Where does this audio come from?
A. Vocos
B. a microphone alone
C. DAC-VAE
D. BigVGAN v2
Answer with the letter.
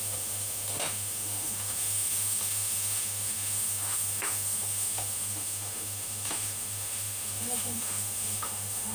C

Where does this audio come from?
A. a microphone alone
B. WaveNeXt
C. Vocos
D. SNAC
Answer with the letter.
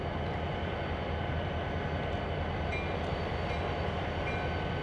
A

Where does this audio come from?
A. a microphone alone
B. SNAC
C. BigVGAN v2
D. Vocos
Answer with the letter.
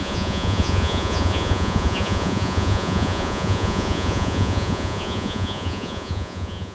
D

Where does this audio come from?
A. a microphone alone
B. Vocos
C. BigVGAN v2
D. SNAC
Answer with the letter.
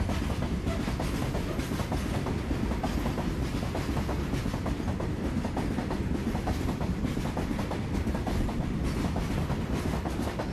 A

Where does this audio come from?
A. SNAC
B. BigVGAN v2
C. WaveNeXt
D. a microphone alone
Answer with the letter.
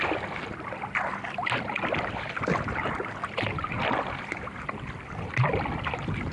D